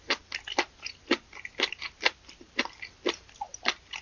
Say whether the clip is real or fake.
real